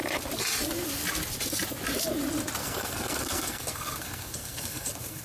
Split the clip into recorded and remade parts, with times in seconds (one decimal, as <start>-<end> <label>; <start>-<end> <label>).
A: 0.0-2.6 recorded; 2.6-5.2 remade